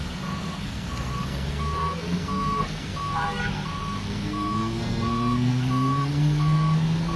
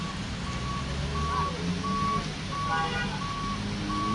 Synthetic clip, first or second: first